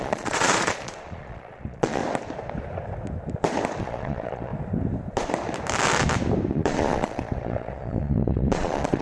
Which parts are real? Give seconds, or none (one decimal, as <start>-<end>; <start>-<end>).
2.0-3.8; 4.5-6.5